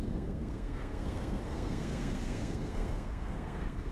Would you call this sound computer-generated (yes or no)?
yes